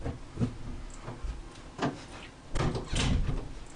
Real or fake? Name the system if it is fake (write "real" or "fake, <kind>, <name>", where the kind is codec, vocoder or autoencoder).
real